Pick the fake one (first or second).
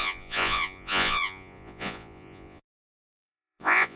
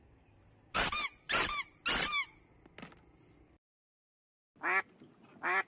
first